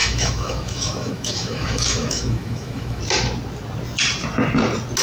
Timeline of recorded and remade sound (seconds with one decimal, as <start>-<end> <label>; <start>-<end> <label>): 0.0-3.0 remade; 3.0-5.0 recorded